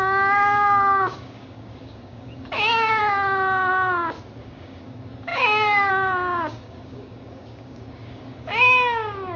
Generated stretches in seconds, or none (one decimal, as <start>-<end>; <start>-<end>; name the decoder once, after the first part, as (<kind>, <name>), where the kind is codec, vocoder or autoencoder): 0.0-3.0 (codec, DAC); 4.4-9.4